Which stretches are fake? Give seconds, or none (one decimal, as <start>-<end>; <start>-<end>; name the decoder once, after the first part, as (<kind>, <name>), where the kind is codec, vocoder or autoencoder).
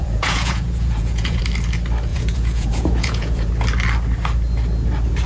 0.0-1.4 (vocoder, Vocos); 2.1-3.5